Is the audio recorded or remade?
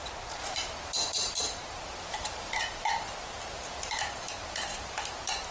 remade